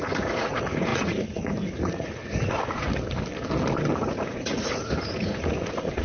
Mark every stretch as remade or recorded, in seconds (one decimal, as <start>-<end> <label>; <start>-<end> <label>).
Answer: 0.0-2.9 remade; 2.9-4.0 recorded; 4.0-6.0 remade